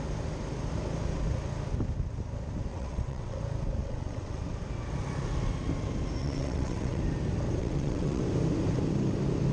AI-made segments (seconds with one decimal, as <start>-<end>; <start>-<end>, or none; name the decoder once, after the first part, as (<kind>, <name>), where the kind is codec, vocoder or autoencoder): 2.7-3.4 (vocoder, WaveNeXt); 3.8-4.4; 6.2-7.0; 7.6-8.2